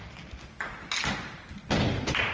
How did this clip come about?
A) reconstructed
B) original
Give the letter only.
B